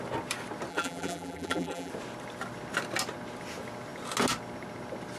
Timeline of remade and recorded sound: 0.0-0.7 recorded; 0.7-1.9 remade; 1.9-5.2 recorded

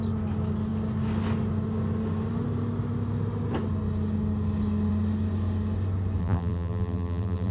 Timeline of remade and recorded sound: 0.0-6.2 recorded; 6.2-7.5 remade

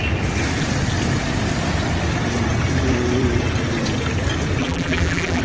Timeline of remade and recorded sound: 0.0-4.6 recorded; 4.6-5.4 remade

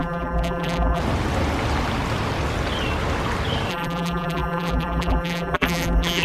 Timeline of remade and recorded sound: 0.0-1.0 remade; 1.0-3.7 recorded; 3.7-6.2 remade

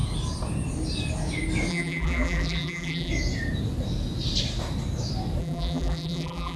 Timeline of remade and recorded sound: 0.0-1.7 recorded; 1.7-3.1 remade; 3.1-5.4 recorded; 5.4-6.6 remade

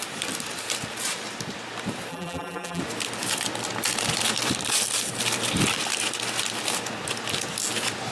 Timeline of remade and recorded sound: 0.0-2.1 recorded; 2.1-2.8 remade; 2.8-8.1 recorded

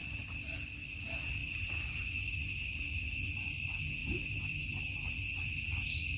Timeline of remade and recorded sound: 0.0-1.4 recorded; 1.4-3.3 remade; 3.3-4.0 recorded; 4.0-4.8 remade; 4.8-6.2 recorded